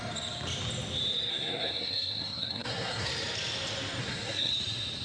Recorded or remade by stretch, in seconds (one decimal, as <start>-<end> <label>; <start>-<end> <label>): 0.0-1.3 recorded; 1.3-3.1 remade; 3.1-4.0 recorded; 4.0-4.5 remade; 4.5-5.0 recorded

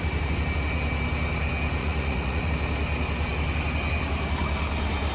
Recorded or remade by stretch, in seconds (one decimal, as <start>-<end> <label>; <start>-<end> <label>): 0.0-1.8 recorded; 1.8-2.5 remade; 2.5-5.1 recorded

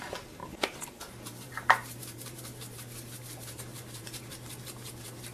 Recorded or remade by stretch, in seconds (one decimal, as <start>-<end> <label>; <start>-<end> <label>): 0.0-5.3 remade

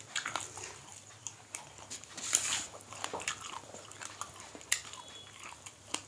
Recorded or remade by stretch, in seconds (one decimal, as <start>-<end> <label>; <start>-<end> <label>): 0.0-6.1 remade

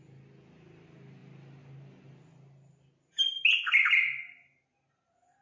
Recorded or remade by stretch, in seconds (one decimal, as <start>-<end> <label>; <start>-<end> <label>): 0.0-5.4 recorded

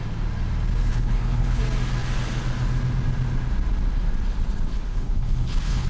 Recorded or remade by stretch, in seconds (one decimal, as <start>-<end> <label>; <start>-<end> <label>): 0.0-0.9 recorded; 0.9-1.6 remade; 1.6-4.7 recorded; 4.7-5.9 remade